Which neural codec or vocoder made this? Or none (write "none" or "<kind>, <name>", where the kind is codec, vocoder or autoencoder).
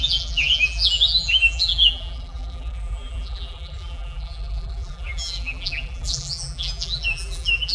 vocoder, BigVGAN v2